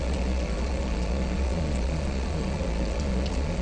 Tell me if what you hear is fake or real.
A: fake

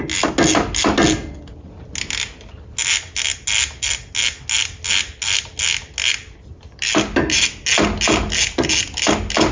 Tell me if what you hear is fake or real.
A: real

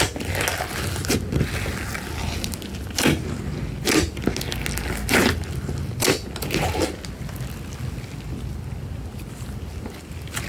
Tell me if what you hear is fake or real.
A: real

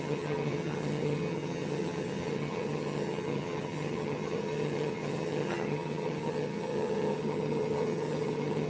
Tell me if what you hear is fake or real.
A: fake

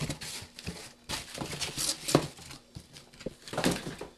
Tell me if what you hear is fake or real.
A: real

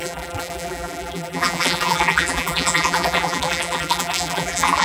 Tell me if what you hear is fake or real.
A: fake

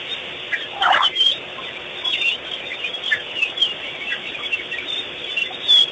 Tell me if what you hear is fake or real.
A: fake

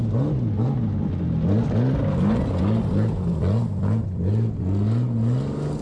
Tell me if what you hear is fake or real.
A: real